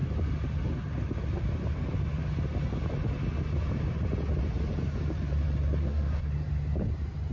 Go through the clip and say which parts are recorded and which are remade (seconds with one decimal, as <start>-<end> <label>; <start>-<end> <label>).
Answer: 0.0-5.8 recorded; 5.8-6.3 remade; 6.3-7.3 recorded